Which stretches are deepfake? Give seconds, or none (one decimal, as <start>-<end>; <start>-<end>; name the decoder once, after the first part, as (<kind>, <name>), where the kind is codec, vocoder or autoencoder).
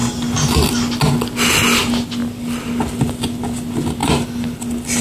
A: 4.0-5.0 (vocoder, BigVGAN v2)